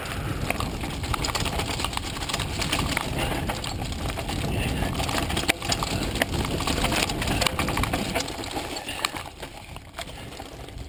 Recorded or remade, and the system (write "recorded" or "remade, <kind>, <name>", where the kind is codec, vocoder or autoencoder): recorded